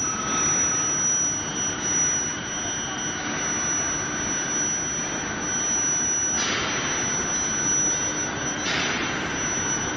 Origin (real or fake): real